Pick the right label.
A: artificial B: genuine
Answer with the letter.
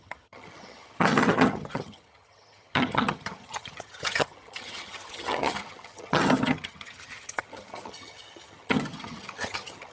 A